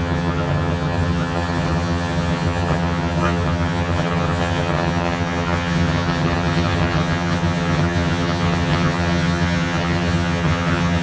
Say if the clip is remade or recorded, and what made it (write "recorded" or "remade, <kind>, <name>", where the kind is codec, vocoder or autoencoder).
remade, vocoder, HiFi-GAN